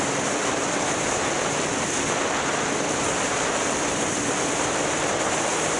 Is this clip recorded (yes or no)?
no